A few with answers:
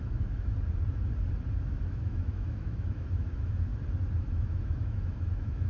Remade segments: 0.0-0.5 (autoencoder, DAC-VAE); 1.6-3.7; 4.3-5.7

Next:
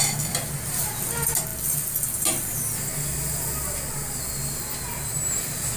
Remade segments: none

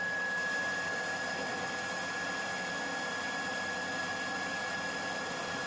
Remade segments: none

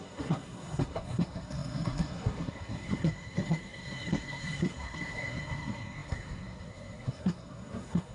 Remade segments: 0.0-8.1 (codec, SNAC)

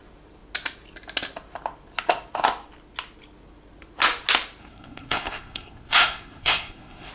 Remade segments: 4.6-7.1 (codec, SNAC)